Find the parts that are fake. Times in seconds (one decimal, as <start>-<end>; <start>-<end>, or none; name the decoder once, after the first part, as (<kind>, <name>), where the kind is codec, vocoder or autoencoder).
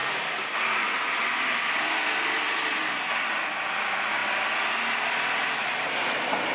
none